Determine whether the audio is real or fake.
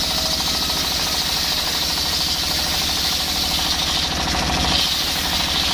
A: real